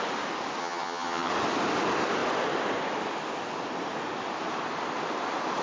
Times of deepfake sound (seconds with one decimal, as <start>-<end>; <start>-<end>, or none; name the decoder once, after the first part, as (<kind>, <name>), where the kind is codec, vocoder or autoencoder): 0.6-1.3 (vocoder, HiFi-GAN)

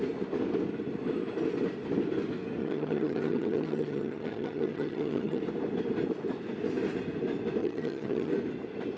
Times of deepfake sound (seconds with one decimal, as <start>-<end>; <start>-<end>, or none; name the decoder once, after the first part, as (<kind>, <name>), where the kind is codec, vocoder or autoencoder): 2.6-5.4 (vocoder, HiFi-GAN); 7.6-8.3

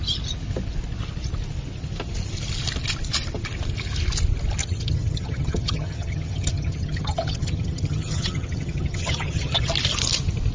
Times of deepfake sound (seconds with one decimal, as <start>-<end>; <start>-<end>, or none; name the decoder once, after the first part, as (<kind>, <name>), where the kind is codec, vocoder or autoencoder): 4.6-9.7 (vocoder, HiFi-GAN)